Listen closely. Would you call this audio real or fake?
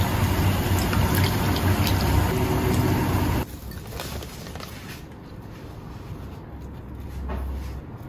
real